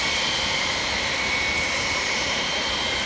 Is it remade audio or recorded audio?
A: remade